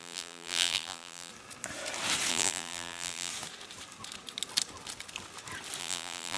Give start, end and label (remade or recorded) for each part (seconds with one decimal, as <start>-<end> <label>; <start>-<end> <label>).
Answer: 0.0-1.3 remade; 1.3-2.3 recorded; 2.3-3.3 remade; 3.3-5.8 recorded; 5.8-6.4 remade

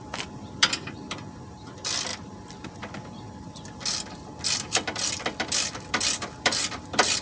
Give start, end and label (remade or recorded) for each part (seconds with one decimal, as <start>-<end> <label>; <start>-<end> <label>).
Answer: 0.0-7.2 remade

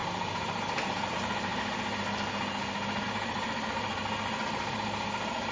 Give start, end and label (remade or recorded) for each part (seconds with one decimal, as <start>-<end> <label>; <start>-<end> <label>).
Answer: 0.0-1.5 remade; 1.5-3.0 recorded; 3.0-4.0 remade; 4.0-4.7 recorded; 4.7-5.5 remade

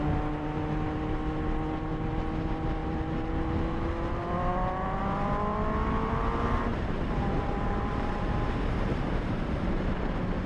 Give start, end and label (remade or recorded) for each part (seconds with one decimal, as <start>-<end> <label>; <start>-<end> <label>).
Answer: 0.0-6.7 recorded; 6.7-9.9 remade; 9.9-10.5 recorded

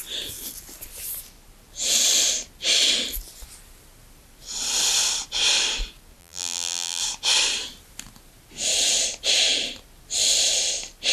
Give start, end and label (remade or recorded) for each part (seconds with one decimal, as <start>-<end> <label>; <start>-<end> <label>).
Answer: 0.0-6.2 recorded; 6.2-7.0 remade; 7.0-11.1 recorded